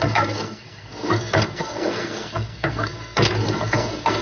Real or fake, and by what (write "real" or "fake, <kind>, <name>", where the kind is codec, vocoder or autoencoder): fake, codec, SNAC